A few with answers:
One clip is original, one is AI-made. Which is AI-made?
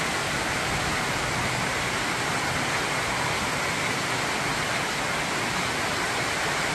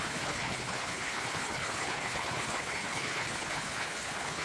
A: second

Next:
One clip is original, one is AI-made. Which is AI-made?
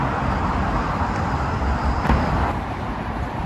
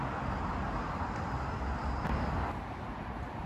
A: first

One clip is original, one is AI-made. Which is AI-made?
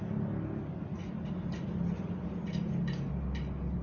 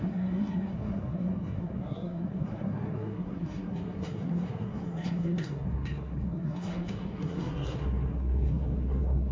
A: second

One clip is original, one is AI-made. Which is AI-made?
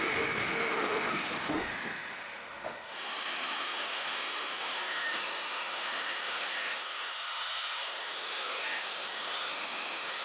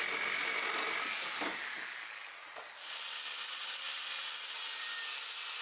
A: first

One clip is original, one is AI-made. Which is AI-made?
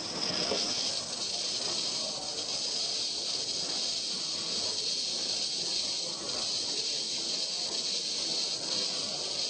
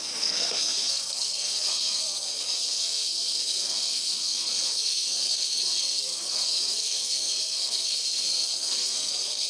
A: second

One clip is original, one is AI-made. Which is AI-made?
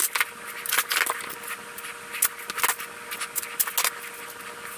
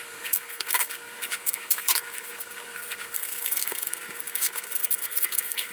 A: second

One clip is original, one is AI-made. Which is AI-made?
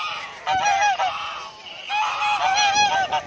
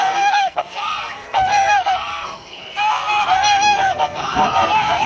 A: second